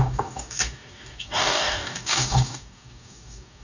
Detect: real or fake fake